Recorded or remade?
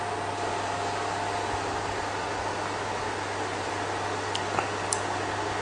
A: recorded